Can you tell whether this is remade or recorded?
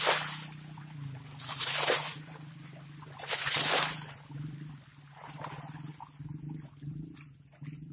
recorded